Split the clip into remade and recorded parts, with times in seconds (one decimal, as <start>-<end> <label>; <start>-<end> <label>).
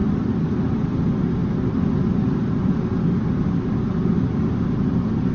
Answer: 0.0-5.3 recorded